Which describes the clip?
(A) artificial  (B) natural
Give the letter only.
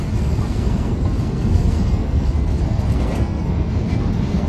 A